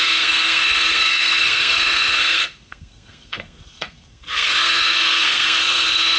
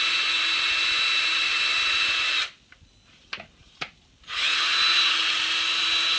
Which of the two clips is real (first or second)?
second